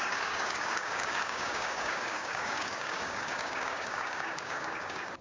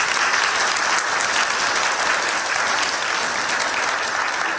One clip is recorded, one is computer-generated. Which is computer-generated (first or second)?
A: first